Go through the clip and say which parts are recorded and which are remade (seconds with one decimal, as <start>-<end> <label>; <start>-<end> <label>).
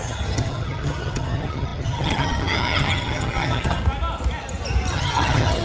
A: 0.0-3.8 remade; 3.8-4.9 recorded; 4.9-5.6 remade